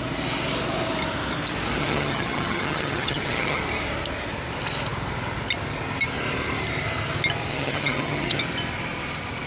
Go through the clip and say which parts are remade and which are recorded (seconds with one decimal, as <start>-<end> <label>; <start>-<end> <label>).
0.0-1.8 recorded; 1.8-3.6 remade; 3.6-7.5 recorded; 7.5-8.4 remade; 8.4-9.5 recorded